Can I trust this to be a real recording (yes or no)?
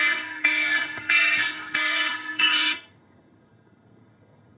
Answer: no